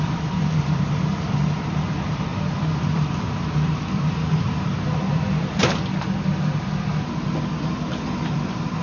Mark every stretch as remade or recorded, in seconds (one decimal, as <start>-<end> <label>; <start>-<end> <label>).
0.0-5.6 remade; 5.6-7.6 recorded; 7.6-8.8 remade